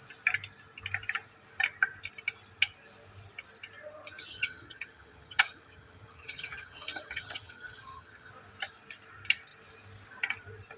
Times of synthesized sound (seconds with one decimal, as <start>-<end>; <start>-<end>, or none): 4.3-8.3

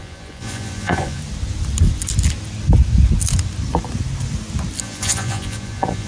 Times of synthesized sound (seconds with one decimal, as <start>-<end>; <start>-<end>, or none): 0.0-1.2; 4.8-6.1

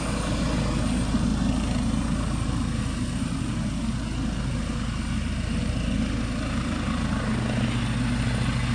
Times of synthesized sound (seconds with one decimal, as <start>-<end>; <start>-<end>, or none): none

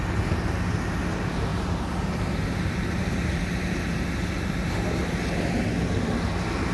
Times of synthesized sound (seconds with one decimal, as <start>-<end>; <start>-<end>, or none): 1.5-4.7

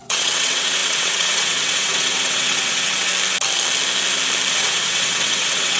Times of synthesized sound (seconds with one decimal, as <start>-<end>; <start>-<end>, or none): 0.0-3.1; 4.5-5.8